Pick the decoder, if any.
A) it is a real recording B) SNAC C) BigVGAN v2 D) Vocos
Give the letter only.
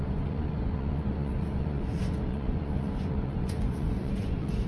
D